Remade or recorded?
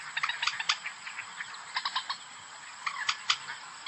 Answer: recorded